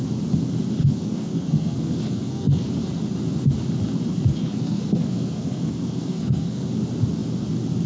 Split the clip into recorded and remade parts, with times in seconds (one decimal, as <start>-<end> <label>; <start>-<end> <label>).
0.0-0.8 recorded; 0.8-2.7 remade; 2.7-4.4 recorded; 4.4-6.7 remade; 6.7-7.9 recorded